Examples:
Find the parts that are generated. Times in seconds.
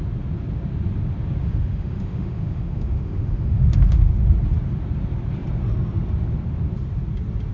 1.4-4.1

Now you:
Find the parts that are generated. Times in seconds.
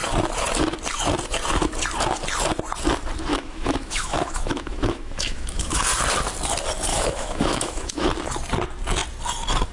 3.3-5.8; 6.9-8.1